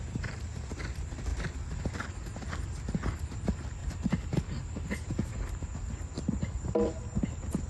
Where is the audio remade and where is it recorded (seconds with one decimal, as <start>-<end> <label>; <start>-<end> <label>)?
0.0-7.7 recorded